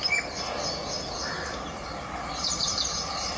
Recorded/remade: recorded